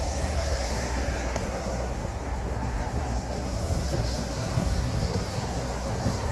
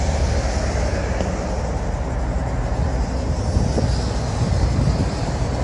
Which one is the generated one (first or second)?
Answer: first